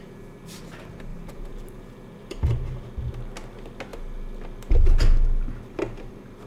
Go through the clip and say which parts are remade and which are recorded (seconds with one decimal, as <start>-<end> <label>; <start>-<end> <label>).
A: 0.0-1.1 recorded; 1.1-2.9 remade; 2.9-6.5 recorded